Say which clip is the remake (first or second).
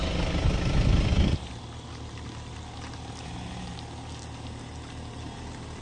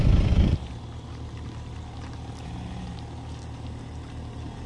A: second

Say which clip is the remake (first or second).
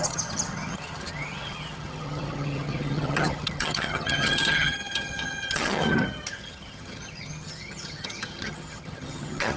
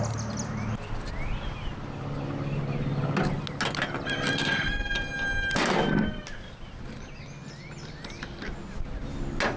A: first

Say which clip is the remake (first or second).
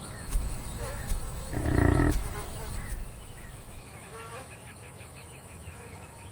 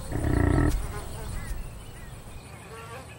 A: first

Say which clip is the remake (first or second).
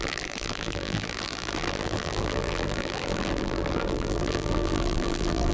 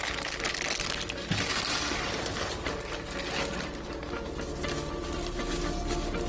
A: first